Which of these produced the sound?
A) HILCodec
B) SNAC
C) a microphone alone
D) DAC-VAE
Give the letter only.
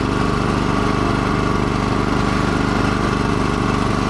C